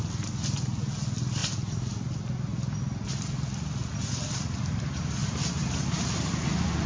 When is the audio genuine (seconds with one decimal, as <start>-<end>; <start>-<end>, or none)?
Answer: 0.0-6.9